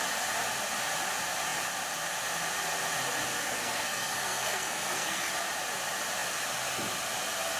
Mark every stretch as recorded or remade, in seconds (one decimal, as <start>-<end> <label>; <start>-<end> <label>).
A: 0.0-3.3 recorded; 3.3-5.3 remade; 5.3-7.6 recorded